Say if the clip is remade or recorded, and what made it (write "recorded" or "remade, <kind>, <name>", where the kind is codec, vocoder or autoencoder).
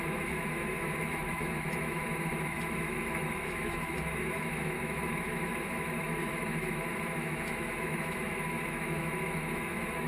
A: remade, autoencoder, DAC-VAE